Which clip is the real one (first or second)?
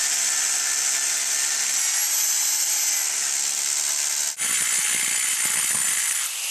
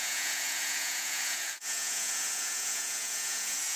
first